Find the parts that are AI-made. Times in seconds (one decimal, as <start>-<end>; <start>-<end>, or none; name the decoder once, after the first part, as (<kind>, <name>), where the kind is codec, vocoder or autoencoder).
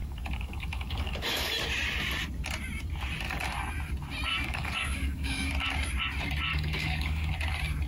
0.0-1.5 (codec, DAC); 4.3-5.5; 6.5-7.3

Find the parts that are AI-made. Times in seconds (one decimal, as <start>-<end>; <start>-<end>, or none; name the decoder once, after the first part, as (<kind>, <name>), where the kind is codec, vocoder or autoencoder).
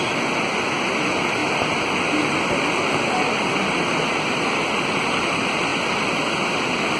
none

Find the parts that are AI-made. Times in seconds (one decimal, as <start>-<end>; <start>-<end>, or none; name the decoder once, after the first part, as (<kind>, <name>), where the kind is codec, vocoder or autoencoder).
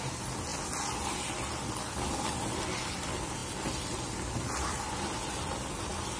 none